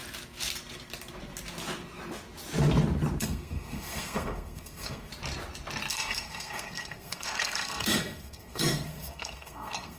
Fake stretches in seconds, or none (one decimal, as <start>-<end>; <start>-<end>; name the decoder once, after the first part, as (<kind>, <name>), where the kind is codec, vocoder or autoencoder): 3.2-5.1 (codec, SNAC); 5.9-10.0

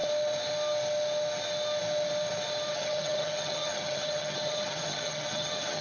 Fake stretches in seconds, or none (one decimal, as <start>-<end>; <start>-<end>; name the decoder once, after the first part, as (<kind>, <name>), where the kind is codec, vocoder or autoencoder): 2.7-5.8 (vocoder, HiFi-GAN)

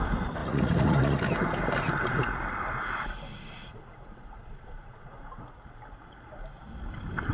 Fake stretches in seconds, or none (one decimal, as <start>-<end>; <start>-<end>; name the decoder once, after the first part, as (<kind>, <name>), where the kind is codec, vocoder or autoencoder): 0.4-1.2 (vocoder, Vocos); 3.3-5.6

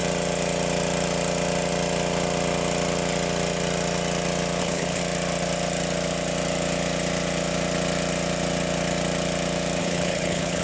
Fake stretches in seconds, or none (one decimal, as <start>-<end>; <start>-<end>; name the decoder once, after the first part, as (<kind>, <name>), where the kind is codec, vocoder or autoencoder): 4.6-5.0 (codec, HILCodec); 9.8-10.6

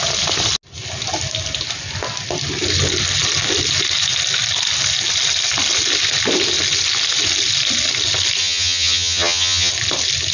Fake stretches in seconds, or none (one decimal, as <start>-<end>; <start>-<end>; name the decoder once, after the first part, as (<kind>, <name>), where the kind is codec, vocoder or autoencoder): 8.4-9.7 (vocoder, HiFi-GAN)

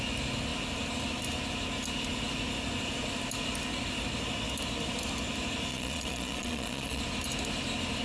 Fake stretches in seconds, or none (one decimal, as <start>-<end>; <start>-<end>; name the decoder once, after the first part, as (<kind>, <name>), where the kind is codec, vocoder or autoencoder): 5.7-7.0 (vocoder, Vocos)

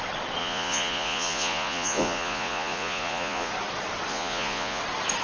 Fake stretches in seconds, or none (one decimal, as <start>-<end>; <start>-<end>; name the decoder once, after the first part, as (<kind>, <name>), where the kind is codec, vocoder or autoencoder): 0.4-3.5 (vocoder, Vocos); 4.1-4.8